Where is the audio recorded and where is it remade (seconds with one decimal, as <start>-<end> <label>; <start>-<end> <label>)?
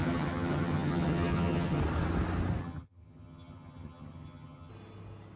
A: 0.0-1.8 remade; 1.8-2.6 recorded; 2.6-4.7 remade; 4.7-5.4 recorded